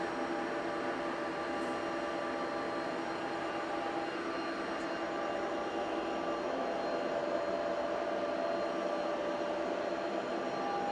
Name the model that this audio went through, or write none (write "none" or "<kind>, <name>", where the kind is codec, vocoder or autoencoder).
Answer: none